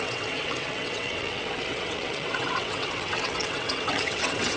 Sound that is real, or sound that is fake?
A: fake